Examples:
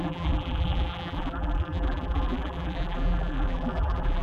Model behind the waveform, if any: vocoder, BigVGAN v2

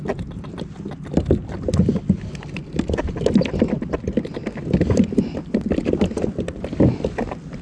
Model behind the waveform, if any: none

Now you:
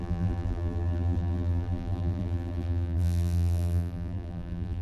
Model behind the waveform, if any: vocoder, BigVGAN v2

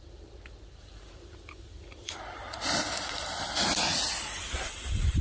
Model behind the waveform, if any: vocoder, BigVGAN v2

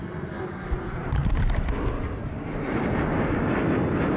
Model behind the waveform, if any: none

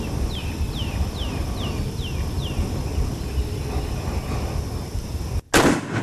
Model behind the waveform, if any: none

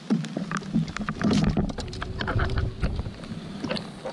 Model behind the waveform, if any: none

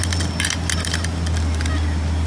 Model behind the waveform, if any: none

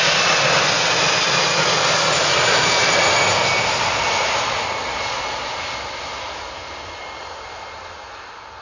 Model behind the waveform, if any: none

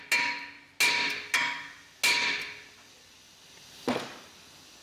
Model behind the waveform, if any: none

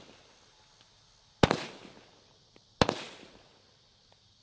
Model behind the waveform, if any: none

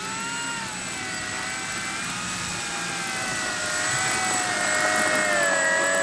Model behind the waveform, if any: none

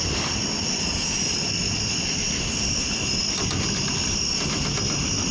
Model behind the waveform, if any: none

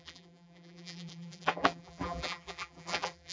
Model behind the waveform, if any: vocoder, BigVGAN v2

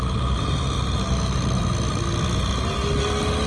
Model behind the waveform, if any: none